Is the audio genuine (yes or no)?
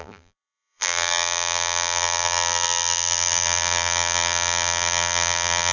no